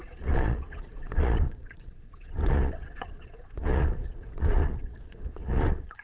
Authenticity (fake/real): fake